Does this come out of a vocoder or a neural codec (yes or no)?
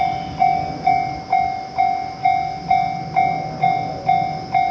no